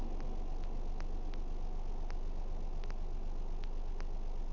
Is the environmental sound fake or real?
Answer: real